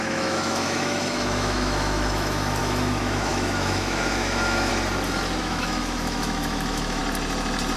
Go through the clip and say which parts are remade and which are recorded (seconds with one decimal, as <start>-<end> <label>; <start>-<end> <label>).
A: 0.0-4.7 remade; 4.7-5.4 recorded; 5.4-7.0 remade; 7.0-7.8 recorded